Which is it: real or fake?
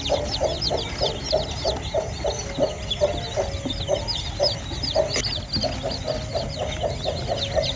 real